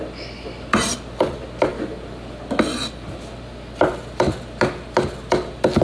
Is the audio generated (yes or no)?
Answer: no